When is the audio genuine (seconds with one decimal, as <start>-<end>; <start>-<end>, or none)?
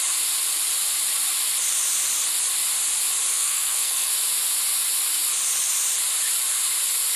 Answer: 0.0-3.3; 4.1-7.2